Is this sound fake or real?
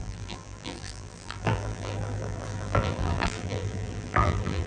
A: fake